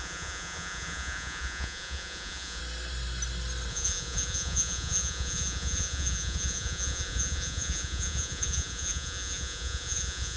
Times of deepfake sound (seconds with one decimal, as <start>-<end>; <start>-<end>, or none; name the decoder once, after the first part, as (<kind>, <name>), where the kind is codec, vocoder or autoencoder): 0.0-2.6 (vocoder, Vocos); 3.7-10.4